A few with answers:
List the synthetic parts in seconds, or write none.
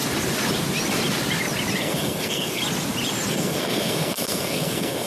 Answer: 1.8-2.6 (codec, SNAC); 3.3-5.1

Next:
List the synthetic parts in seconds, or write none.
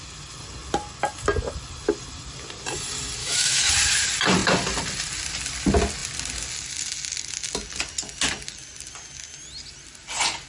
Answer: 3.2-3.7 (autoencoder, DAC-VAE)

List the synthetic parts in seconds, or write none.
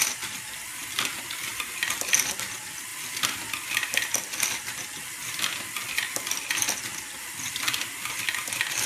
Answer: none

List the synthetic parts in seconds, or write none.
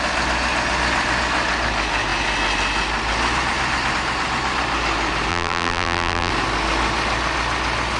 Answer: 5.3-6.3 (vocoder, BigVGAN v2)